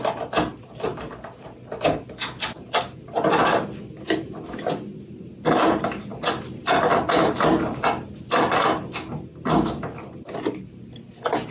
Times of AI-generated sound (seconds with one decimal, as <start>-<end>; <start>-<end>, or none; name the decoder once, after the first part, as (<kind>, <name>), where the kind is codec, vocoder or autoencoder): none

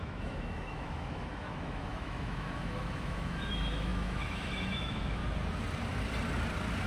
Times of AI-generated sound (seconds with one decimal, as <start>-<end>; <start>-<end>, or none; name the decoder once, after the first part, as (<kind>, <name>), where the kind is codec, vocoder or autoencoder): 0.0-5.2 (autoencoder, DAC-VAE)

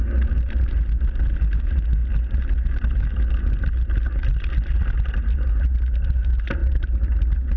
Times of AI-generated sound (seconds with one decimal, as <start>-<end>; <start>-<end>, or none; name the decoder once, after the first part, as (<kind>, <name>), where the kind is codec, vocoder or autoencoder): none

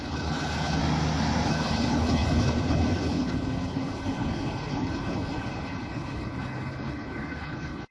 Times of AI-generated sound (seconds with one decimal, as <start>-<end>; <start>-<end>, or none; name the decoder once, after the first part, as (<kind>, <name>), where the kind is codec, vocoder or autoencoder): 0.0-0.8 (codec, HILCodec); 1.5-7.9

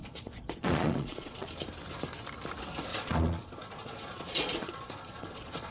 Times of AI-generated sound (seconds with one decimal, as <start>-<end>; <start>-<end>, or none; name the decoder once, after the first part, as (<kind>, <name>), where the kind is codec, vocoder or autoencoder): 0.0-1.5 (vocoder, Vocos); 2.9-5.7

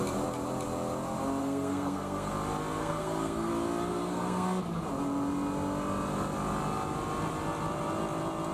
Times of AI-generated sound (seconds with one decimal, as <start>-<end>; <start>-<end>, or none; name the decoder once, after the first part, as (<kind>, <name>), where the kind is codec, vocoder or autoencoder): 1.4-2.3 (codec, SNAC); 2.8-3.5; 3.9-4.6

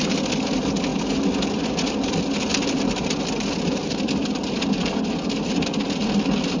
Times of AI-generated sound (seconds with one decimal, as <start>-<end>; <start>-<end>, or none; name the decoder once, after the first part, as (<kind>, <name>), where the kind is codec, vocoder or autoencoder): none